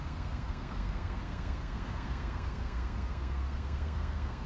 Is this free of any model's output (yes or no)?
no